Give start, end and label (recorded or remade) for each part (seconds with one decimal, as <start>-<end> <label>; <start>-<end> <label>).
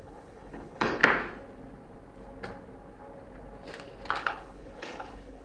0.0-1.0 remade; 1.0-4.2 recorded; 4.2-5.4 remade